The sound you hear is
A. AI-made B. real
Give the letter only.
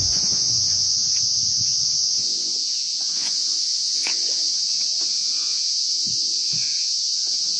A